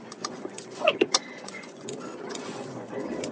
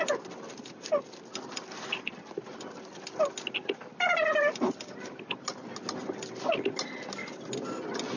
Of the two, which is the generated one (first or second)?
first